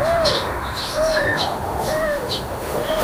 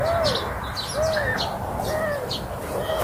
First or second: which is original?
second